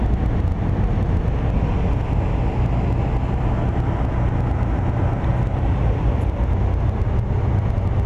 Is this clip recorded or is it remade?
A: recorded